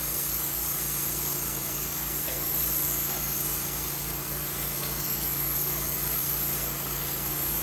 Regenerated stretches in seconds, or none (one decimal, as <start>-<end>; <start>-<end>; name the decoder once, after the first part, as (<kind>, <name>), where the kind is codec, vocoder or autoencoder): 0.0-7.6 (codec, SNAC)

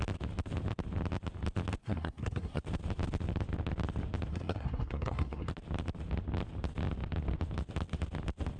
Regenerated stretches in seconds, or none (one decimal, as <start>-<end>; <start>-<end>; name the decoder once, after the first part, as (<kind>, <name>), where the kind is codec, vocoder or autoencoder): 1.8-2.6 (codec, SNAC); 4.3-5.5

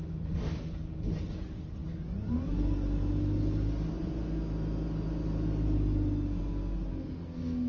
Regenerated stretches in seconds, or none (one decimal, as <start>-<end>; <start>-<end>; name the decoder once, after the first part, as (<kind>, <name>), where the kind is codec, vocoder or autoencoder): 6.9-7.7 (codec, SNAC)

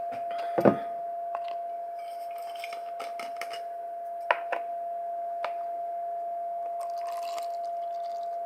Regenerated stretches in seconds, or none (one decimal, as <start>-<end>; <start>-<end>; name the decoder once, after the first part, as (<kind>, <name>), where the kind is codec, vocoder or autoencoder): none

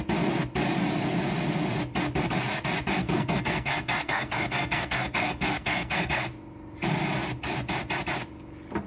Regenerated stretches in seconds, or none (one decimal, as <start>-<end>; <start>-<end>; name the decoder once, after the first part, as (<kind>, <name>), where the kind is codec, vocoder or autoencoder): 3.0-6.2 (codec, SNAC)

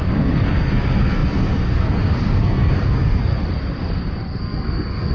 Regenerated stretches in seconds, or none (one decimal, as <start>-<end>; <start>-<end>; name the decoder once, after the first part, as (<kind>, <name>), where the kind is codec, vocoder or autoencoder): 0.0-3.4 (codec, SNAC); 4.4-5.1

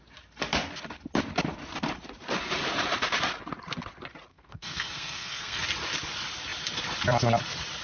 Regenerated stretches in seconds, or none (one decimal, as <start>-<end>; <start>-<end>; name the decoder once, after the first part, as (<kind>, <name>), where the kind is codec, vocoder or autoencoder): 4.3-5.6 (codec, SNAC)